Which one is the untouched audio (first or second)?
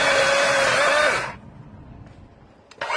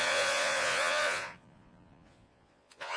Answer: first